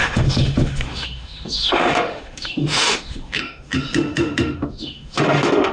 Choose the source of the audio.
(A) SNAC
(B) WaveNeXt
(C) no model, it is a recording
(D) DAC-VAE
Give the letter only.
D